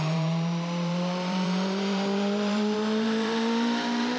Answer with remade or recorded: remade